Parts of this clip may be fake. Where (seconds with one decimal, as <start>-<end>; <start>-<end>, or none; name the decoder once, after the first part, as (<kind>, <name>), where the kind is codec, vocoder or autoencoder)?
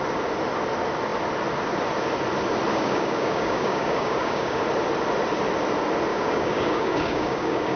2.7-4.6 (codec, DAC); 6.1-7.8